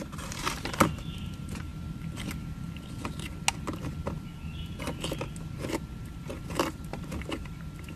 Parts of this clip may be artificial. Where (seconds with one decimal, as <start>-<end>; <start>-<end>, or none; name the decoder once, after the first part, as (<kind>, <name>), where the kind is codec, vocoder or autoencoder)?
0.0-1.7 (vocoder, BigVGAN v2); 6.0-8.0